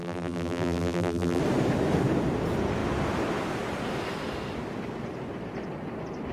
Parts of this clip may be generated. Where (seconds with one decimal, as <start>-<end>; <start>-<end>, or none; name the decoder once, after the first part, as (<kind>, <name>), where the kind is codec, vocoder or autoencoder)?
0.0-1.4 (vocoder, BigVGAN v2)